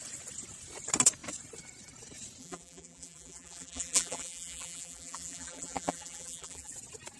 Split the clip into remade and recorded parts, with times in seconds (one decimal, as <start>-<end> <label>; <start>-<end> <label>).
0.0-2.4 recorded; 2.4-6.7 remade; 6.7-7.2 recorded